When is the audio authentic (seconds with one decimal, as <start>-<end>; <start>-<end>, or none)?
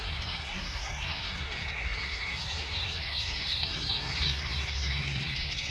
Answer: none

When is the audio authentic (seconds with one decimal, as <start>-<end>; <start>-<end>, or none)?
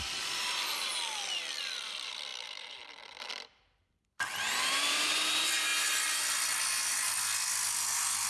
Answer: 5.7-6.2